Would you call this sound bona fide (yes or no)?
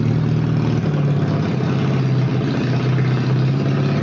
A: yes